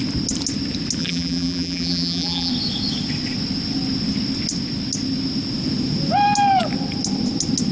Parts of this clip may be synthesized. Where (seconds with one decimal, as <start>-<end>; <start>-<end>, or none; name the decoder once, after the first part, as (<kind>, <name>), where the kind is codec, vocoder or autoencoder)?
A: 1.0-2.5 (vocoder, BigVGAN v2)